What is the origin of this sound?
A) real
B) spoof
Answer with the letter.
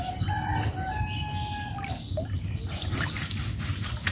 A